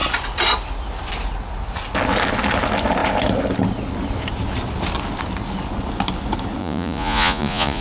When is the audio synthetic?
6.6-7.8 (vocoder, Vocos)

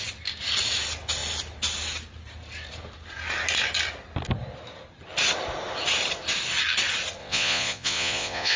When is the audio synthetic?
7.2-8.6 (vocoder, Vocos)

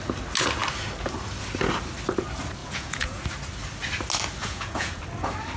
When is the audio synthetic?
2.6-3.2 (vocoder, Vocos); 4.4-5.0

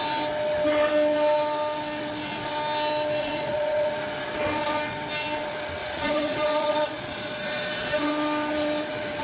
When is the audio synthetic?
3.2-3.9 (vocoder, Vocos); 5.8-8.1

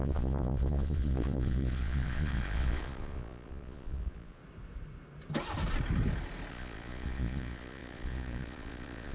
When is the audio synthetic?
0.0-4.4 (vocoder, Vocos); 6.5-9.1

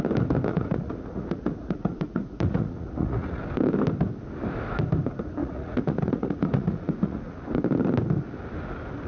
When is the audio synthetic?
0.5-3.4 (vocoder, Vocos); 5.4-7.3

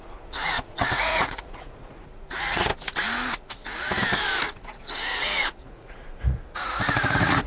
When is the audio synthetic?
0.0-2.7 (vocoder, Vocos); 5.2-7.5